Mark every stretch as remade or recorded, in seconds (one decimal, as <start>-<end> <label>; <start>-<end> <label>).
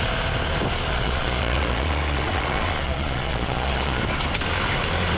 0.0-0.9 recorded; 0.9-4.0 remade; 4.0-5.2 recorded